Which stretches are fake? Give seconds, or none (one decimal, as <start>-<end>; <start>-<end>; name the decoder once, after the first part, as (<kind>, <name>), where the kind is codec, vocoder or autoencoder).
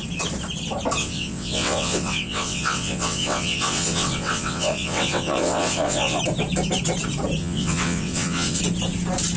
1.0-6.2 (vocoder, WaveNeXt); 7.4-8.6